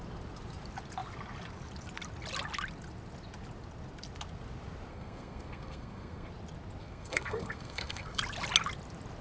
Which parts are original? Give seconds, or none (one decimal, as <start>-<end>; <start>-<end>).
0.0-4.9; 6.3-6.8; 8.2-9.2